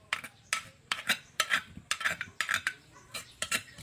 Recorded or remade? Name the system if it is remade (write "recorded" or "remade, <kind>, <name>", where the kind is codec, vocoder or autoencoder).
remade, vocoder, BigVGAN v2